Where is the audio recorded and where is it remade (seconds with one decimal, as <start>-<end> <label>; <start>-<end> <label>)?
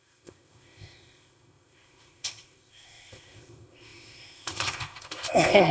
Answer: 0.0-5.7 remade